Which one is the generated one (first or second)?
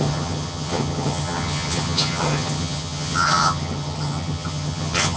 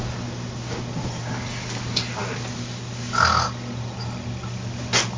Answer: first